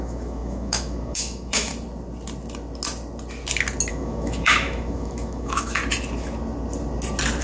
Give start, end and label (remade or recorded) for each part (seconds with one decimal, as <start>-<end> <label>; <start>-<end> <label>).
0.0-1.7 remade; 1.7-3.9 recorded; 3.9-5.8 remade; 5.8-7.4 recorded